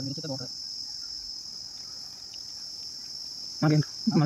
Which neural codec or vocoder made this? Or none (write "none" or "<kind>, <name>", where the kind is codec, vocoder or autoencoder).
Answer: none